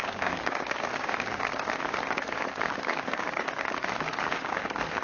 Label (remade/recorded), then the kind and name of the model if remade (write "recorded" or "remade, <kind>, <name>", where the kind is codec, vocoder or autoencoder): remade, codec, DAC